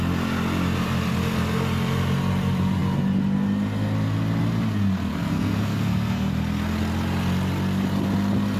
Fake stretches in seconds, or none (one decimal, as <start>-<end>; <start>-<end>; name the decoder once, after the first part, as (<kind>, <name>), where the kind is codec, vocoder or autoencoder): 5.1-6.3 (codec, SNAC)